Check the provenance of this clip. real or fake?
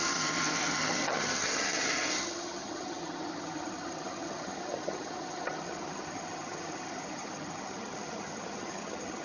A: fake